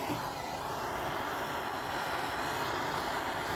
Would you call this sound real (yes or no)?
yes